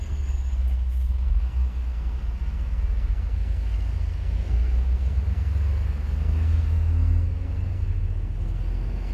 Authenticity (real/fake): fake